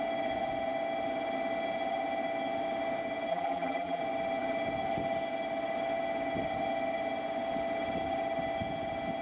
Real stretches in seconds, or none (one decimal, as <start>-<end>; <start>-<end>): 0.0-3.3; 4.0-9.2